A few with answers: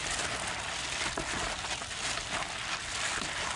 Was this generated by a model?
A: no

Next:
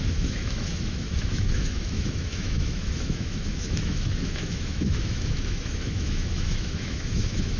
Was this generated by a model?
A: yes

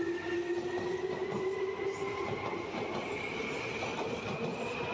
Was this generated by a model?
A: no